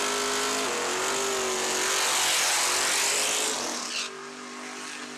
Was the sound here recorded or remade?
recorded